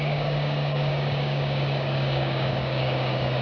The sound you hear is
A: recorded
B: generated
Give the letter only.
B